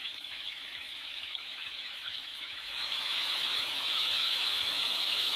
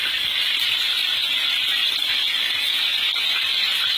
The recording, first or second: second